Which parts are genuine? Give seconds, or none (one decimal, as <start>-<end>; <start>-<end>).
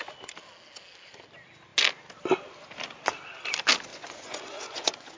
0.0-3.9